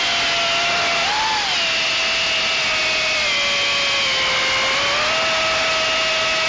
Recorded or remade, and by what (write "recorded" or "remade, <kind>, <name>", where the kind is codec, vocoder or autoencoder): recorded